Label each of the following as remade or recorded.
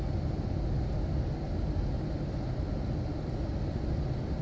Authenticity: recorded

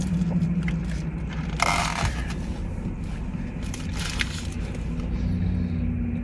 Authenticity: recorded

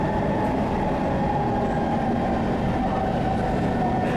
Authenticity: recorded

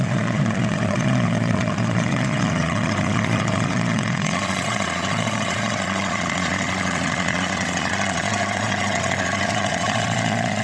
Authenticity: remade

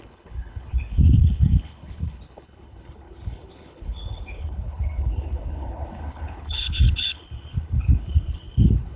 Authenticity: remade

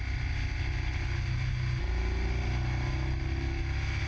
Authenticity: recorded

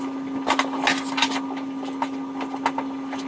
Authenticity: recorded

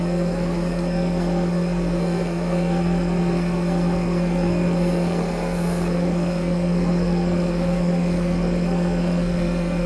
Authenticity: remade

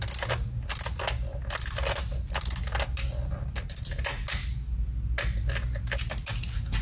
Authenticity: recorded